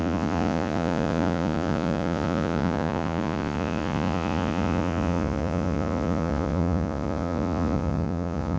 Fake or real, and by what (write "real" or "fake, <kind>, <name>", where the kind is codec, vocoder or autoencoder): fake, vocoder, Vocos